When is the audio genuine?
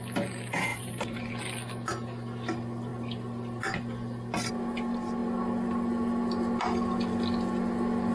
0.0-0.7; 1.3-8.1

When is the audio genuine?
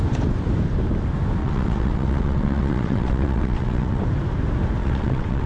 0.0-1.4; 4.0-4.8